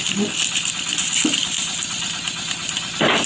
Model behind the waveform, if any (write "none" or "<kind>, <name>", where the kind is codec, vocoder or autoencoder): none